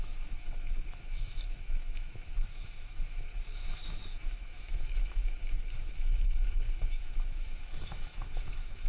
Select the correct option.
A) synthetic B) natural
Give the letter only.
A